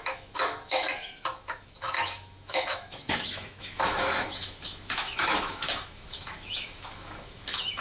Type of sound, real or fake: fake